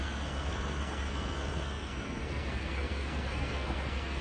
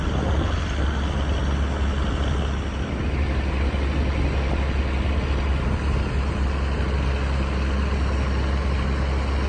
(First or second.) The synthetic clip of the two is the first